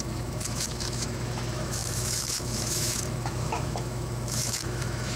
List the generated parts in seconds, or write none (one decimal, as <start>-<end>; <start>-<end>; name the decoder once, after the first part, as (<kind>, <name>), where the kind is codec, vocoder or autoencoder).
0.0-5.2 (autoencoder, DAC-VAE)